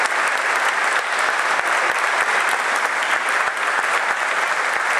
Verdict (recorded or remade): recorded